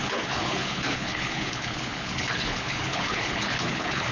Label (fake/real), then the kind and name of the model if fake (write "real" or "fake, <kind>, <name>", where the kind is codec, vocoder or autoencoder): fake, codec, HILCodec